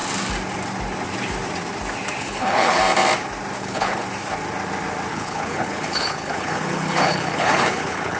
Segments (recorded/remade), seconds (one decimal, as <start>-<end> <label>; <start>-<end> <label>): 0.0-2.2 recorded; 2.2-2.8 remade; 2.8-3.6 recorded; 3.6-4.0 remade; 4.0-5.1 recorded; 5.1-8.2 remade